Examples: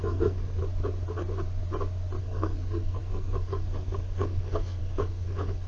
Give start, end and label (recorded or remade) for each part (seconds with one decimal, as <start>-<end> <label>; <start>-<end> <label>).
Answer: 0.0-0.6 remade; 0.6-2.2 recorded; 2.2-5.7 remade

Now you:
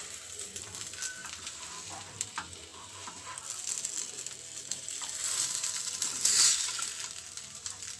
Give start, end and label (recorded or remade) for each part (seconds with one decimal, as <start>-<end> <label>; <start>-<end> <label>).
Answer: 0.0-2.7 remade; 2.7-4.6 recorded; 4.6-8.0 remade

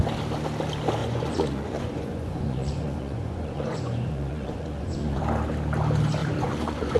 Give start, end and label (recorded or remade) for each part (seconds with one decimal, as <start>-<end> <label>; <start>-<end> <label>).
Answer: 0.0-1.0 recorded; 1.0-5.2 remade; 5.2-6.2 recorded; 6.2-7.0 remade